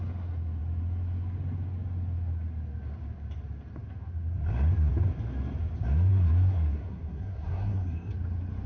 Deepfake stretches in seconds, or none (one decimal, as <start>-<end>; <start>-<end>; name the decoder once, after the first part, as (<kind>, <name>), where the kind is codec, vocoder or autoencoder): 6.1-8.1 (codec, SNAC)